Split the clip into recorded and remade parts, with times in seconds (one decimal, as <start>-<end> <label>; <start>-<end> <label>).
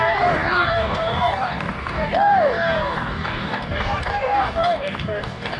0.0-5.6 remade